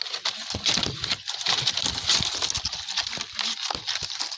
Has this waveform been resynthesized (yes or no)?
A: no